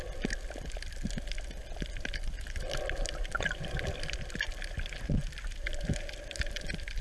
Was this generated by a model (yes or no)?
no